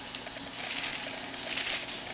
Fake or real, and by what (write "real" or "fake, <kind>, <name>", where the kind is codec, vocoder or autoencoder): real